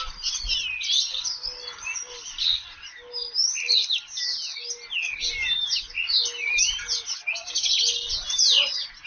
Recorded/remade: recorded